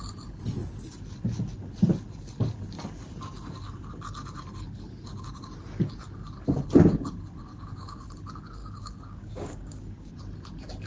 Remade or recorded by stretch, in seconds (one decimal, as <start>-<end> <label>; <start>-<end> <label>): 0.0-7.5 recorded; 7.5-8.1 remade; 8.1-8.6 recorded; 8.6-10.1 remade; 10.1-10.9 recorded